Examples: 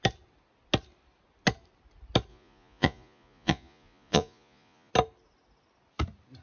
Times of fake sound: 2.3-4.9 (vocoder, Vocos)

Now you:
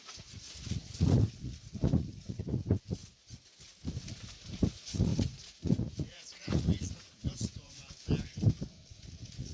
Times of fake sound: 0.0-3.0 (vocoder, Vocos); 4.1-7.8; 8.9-9.5

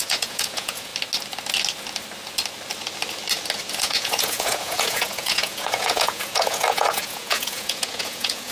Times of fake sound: 0.0-0.9 (vocoder, Vocos); 3.8-8.5

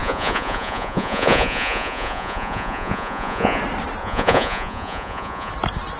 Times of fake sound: 0.0-3.6 (vocoder, Vocos); 4.0-5.5

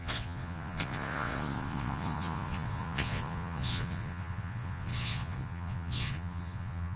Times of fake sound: 0.0-7.0 (vocoder, Vocos)

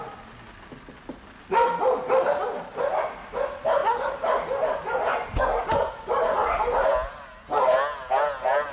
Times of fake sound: none